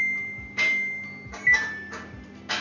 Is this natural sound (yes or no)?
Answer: yes